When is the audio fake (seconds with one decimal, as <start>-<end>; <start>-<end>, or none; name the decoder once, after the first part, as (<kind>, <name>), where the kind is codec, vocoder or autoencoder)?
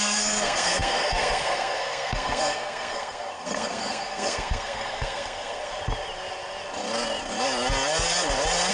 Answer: 0.0-5.7 (codec, SNAC)